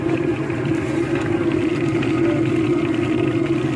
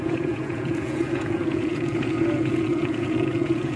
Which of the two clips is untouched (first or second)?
first